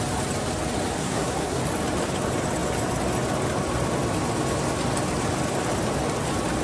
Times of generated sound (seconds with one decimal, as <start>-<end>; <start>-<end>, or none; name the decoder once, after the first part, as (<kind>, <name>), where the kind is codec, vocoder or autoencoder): 1.0-1.6 (codec, SNAC)